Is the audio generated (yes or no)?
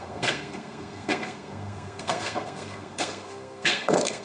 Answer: yes